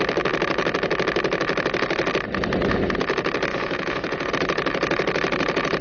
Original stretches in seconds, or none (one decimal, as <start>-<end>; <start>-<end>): 0.0-3.5; 4.3-5.8